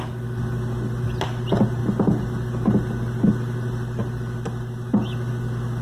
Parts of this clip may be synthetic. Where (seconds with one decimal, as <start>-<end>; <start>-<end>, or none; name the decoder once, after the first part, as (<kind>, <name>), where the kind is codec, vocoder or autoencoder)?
none